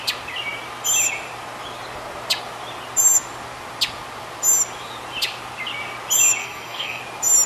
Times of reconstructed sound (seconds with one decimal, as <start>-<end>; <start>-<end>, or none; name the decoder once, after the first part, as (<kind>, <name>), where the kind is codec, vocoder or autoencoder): 6.4-7.0 (codec, SNAC)